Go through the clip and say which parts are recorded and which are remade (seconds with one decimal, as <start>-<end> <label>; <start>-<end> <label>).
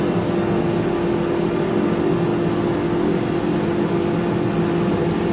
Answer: 0.0-5.3 recorded